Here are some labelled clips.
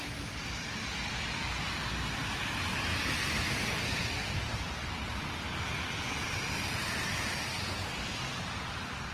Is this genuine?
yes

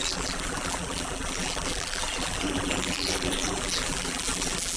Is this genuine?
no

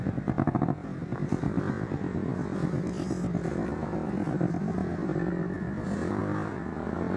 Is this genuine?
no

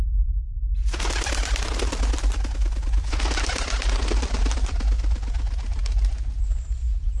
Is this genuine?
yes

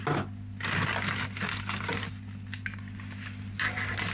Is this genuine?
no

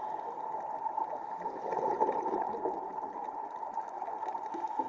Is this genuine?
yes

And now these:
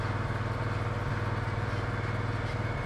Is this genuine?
yes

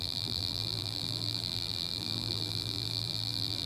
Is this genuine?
no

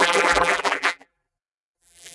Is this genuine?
no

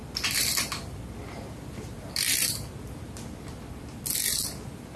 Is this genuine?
no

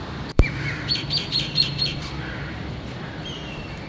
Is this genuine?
no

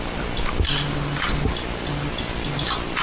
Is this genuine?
yes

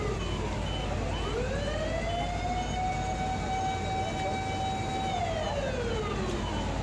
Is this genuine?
yes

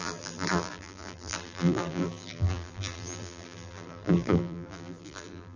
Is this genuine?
no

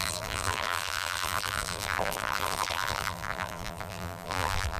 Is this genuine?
no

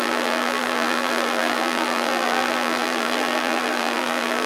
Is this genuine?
no